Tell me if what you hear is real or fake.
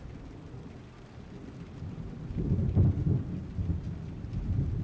real